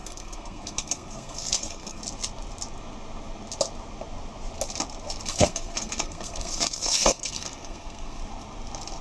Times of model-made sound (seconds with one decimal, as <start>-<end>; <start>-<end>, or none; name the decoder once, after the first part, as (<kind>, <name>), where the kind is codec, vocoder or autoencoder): 0.0-2.0 (codec, SNAC); 5.3-8.2